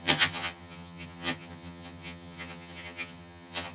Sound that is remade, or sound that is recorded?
remade